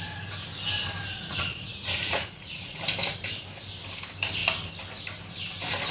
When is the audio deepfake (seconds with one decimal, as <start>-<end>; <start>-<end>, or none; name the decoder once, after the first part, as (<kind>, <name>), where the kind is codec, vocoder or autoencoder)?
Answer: 1.1-2.8 (vocoder, Vocos)